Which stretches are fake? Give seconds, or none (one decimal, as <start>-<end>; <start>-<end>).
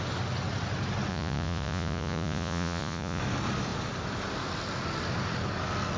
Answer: 1.1-3.2